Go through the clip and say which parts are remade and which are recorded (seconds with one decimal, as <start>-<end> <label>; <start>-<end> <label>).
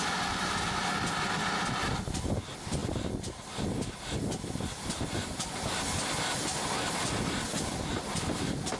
0.0-8.8 recorded